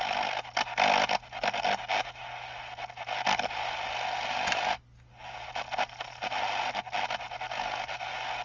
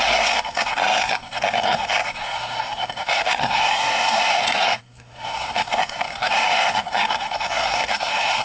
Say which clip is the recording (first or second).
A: first